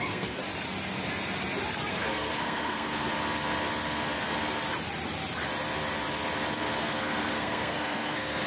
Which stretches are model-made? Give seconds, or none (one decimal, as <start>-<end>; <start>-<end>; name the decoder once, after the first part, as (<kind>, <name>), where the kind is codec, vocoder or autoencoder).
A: 0.0-0.4 (codec, SNAC); 1.9-3.1; 6.8-8.5

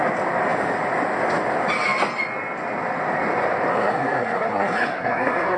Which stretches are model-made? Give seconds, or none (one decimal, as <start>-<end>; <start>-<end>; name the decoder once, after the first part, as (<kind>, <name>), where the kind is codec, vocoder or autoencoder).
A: 3.7-5.6 (codec, SNAC)